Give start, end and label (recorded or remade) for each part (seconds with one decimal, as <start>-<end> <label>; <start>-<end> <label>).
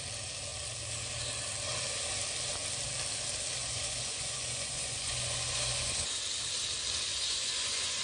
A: 0.0-3.6 recorded; 3.6-6.2 remade; 6.2-7.1 recorded; 7.1-8.0 remade